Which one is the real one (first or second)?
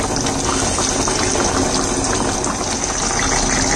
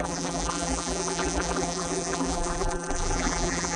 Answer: first